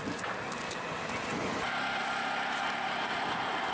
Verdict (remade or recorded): recorded